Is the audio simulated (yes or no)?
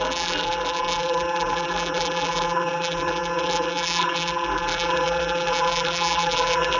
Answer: yes